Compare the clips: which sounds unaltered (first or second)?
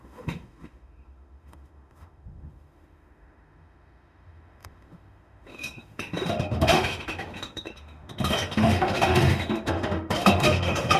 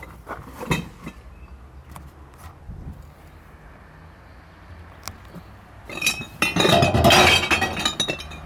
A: second